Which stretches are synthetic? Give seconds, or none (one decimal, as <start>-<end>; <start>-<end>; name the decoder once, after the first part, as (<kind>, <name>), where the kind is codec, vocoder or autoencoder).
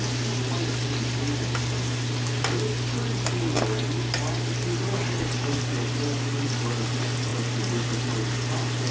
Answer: none